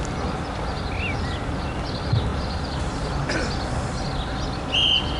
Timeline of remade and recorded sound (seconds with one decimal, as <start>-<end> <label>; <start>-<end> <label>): 0.0-2.3 recorded; 2.3-3.1 remade; 3.1-5.2 recorded